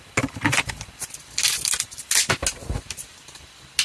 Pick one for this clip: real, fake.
real